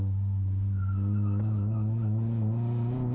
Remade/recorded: recorded